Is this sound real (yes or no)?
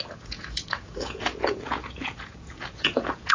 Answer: no